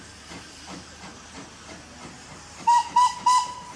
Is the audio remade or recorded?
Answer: recorded